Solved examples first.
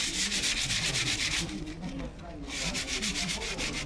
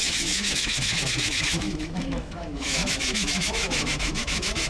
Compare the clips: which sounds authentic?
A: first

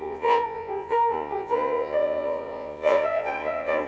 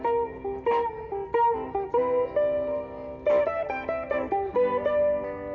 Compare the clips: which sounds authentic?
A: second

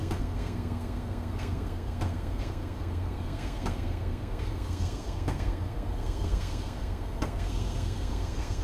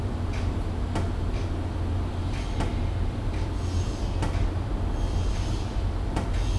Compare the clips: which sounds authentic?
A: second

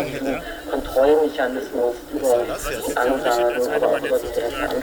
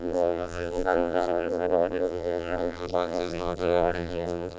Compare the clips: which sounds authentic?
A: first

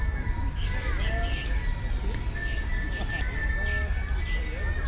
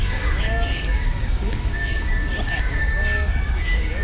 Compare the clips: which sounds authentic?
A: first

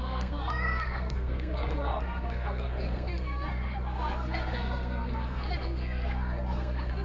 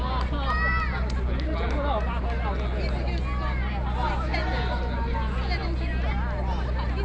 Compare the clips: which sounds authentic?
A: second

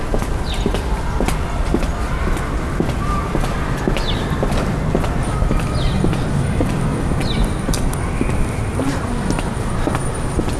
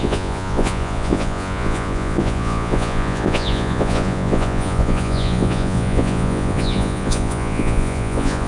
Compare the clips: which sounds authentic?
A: first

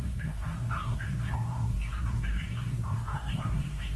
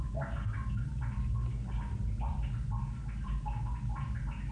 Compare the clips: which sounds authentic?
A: second